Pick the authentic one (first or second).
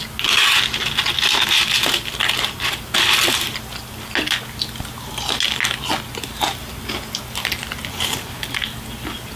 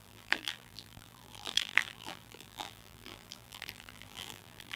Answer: first